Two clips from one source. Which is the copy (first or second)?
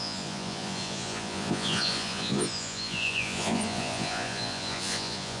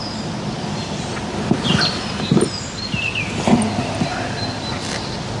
first